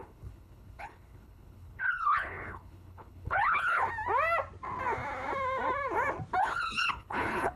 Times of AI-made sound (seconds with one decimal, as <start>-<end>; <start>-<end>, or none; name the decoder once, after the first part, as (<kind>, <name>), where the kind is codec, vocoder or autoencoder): 0.0-3.8 (codec, HILCodec); 6.4-7.6